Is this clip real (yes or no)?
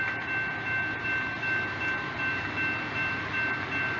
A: yes